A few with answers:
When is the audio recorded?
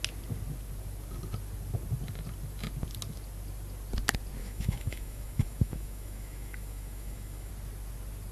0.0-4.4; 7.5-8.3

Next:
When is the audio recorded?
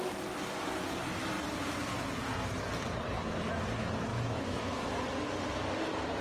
0.0-4.1; 5.0-6.2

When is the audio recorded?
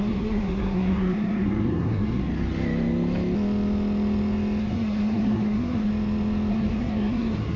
2.3-4.6; 5.9-6.5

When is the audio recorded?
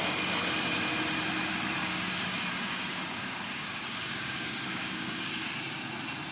0.0-1.8; 5.5-6.3